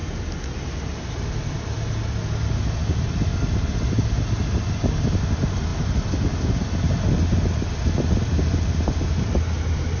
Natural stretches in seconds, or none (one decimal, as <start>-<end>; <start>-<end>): 0.0-10.0